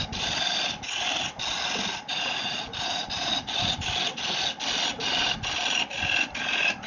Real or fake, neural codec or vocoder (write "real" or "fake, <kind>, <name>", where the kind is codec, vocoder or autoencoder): real